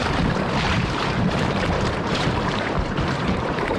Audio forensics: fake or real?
fake